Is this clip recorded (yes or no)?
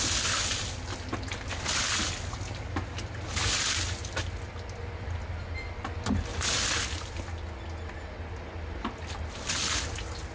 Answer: yes